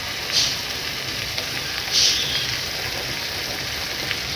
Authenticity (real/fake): real